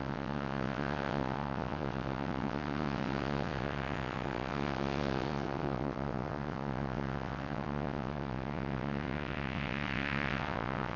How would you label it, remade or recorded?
remade